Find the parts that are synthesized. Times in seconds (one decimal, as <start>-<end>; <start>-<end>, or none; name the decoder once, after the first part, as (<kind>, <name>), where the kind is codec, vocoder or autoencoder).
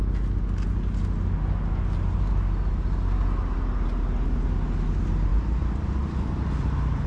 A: 5.3-7.1 (vocoder, BigVGAN v2)